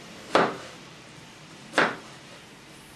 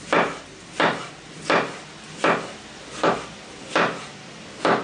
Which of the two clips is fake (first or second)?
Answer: first